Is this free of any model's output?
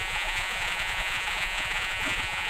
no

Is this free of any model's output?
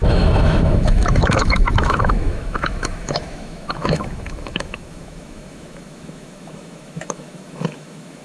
no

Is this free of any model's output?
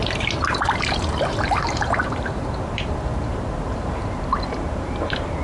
no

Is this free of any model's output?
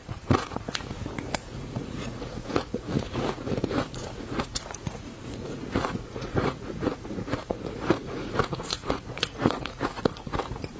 no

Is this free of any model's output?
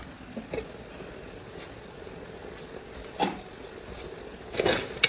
yes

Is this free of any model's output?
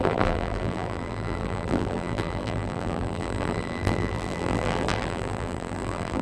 no